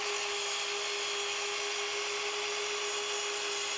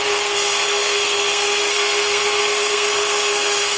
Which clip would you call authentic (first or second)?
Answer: first